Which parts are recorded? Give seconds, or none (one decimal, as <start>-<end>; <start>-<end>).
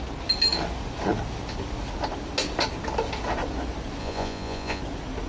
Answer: 0.0-4.0; 4.8-5.3